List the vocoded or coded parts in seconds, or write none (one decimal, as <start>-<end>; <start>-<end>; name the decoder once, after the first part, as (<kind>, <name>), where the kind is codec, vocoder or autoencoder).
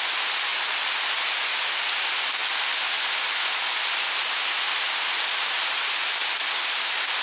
0.5-1.2 (vocoder, BigVGAN v2)